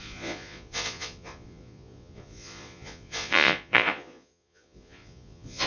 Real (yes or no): no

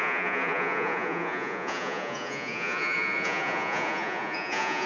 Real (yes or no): no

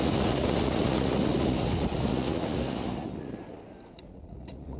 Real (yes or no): no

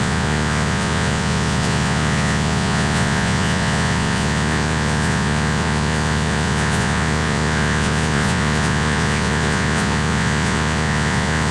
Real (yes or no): no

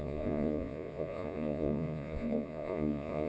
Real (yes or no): no